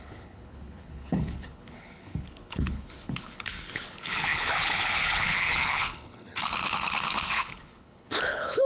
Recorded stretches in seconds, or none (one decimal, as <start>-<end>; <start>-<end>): none